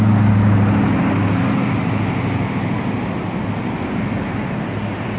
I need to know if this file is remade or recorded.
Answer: recorded